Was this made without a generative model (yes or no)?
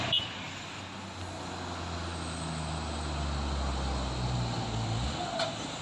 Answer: yes